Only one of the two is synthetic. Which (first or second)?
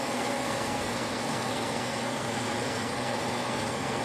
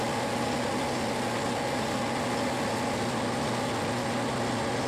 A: first